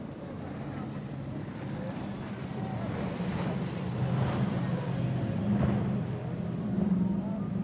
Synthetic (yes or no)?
yes